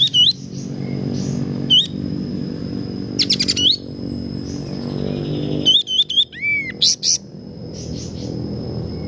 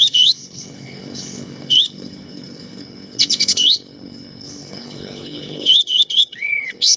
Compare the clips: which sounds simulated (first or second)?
second